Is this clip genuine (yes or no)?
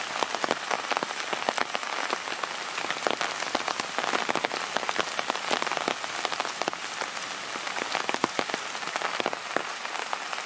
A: yes